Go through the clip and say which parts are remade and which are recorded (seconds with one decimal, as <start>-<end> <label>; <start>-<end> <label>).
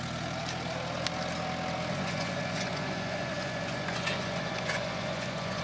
0.0-1.9 recorded; 1.9-5.6 remade